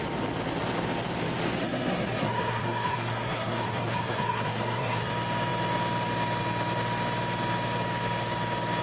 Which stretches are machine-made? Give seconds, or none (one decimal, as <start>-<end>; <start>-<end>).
1.6-5.1